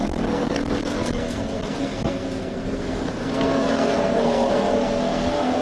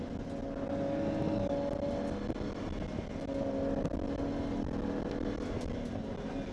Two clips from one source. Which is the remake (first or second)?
first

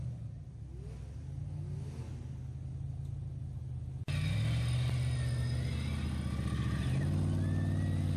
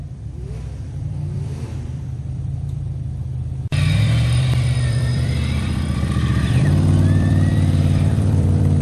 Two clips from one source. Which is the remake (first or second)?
second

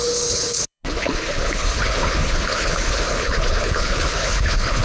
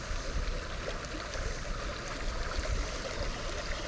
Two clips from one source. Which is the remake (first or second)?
first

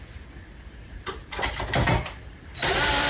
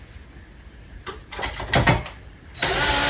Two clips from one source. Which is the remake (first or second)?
first